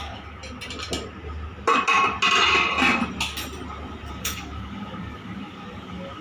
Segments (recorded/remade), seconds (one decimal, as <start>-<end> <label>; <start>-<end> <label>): 0.0-0.4 remade; 0.4-4.1 recorded; 4.1-6.2 remade